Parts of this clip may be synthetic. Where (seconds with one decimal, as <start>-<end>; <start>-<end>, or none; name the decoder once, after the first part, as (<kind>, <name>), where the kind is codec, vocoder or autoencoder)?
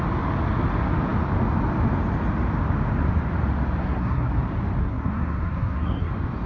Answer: 3.8-4.3 (codec, SNAC); 4.8-6.1